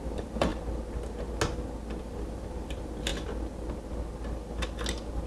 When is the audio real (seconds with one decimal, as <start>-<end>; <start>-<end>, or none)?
0.5-2.0; 3.1-5.3